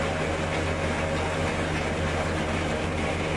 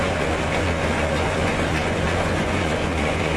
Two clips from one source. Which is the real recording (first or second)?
first